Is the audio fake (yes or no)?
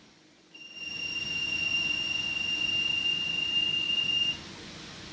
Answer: yes